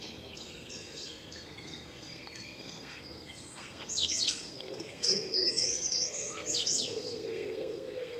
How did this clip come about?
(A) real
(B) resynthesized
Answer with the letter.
B